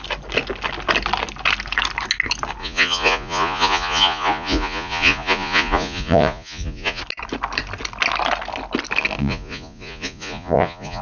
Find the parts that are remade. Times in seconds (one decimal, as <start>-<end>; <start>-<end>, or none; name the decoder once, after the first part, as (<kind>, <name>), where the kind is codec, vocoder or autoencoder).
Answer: 2.6-7.0 (vocoder, Vocos); 9.2-11.0